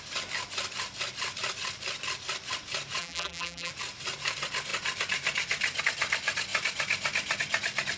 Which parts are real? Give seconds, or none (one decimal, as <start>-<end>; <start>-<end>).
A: 0.0-3.0; 3.7-8.0